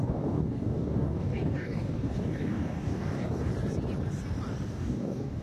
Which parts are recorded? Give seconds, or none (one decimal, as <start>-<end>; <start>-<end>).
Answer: 3.5-4.7